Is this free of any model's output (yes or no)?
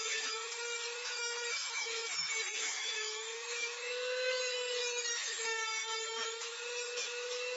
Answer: no